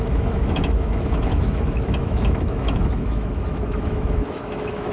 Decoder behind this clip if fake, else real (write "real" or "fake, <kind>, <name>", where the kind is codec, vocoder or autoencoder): fake, autoencoder, DAC-VAE